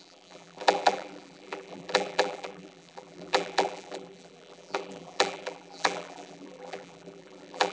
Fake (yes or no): yes